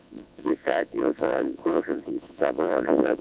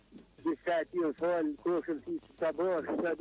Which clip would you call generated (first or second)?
first